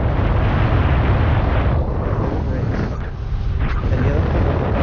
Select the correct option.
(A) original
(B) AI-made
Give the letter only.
A